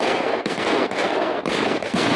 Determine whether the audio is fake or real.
fake